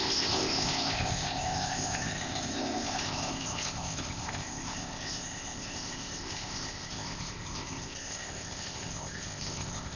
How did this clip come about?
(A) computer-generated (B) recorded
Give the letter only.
A